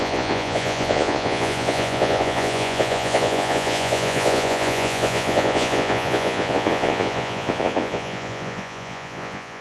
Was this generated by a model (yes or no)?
yes